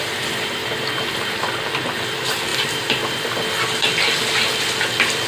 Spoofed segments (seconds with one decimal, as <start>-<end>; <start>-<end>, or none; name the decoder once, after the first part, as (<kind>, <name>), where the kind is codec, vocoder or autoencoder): none